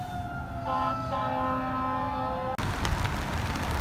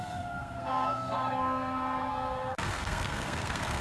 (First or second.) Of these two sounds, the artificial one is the second